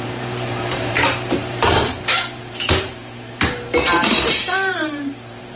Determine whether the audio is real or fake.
fake